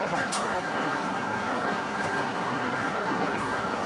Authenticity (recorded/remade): remade